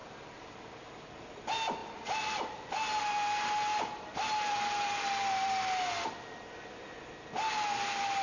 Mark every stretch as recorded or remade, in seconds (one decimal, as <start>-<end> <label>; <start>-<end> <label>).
0.0-8.2 recorded